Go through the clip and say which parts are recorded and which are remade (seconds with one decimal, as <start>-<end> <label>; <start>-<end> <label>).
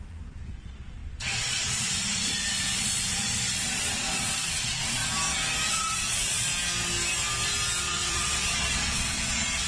0.0-5.0 remade; 5.0-5.7 recorded; 5.7-6.5 remade; 6.5-7.8 recorded; 7.8-9.7 remade